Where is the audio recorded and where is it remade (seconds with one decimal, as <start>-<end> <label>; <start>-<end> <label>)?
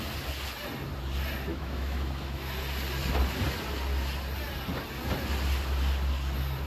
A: 0.0-1.5 recorded; 1.5-2.5 remade; 2.5-6.7 recorded